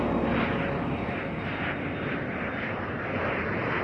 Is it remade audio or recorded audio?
recorded